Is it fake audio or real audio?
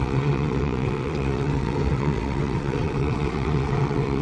fake